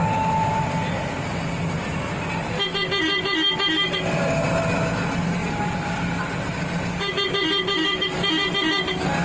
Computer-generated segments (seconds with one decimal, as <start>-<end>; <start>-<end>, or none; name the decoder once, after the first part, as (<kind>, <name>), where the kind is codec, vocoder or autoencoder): none